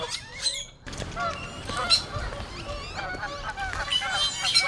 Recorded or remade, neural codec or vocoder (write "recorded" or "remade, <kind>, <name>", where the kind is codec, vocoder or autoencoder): recorded